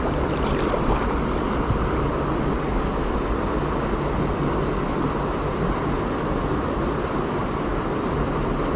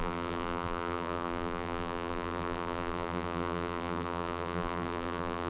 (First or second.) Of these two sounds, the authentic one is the first